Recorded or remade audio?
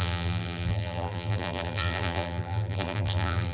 remade